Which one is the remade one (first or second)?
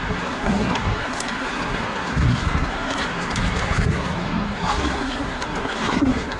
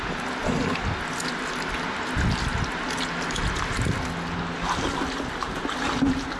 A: first